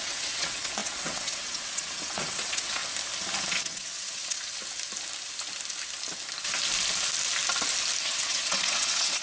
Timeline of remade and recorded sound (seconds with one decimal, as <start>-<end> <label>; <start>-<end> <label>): 0.0-2.8 remade; 2.8-3.5 recorded; 3.5-4.5 remade; 4.5-8.0 recorded; 8.0-9.2 remade